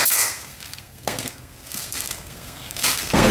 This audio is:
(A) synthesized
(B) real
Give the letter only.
A